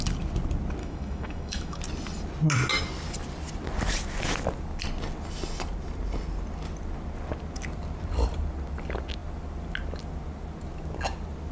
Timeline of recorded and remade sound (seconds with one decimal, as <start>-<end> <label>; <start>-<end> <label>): 0.0-0.8 recorded; 0.8-1.8 remade; 1.8-11.5 recorded